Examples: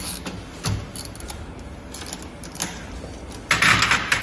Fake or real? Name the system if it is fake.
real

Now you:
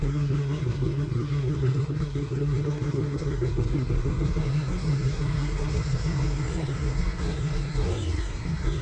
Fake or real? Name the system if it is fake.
fake, codec, SNAC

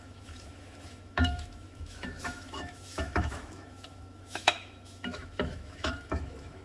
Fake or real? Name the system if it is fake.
fake, autoencoder, DAC-VAE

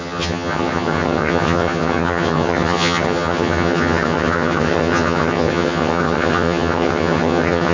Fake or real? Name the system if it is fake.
fake, vocoder, HiFi-GAN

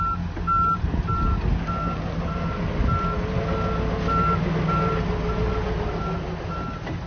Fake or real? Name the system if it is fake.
real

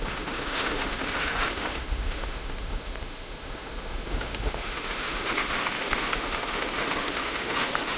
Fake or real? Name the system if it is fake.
fake, autoencoder, DAC-VAE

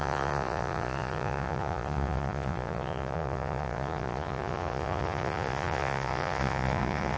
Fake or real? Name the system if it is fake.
fake, vocoder, Vocos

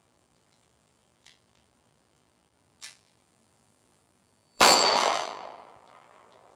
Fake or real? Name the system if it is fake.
fake, vocoder, BigVGAN v2